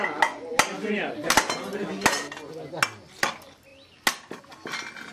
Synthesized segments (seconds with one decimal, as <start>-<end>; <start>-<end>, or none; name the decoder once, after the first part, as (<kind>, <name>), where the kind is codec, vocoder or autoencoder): none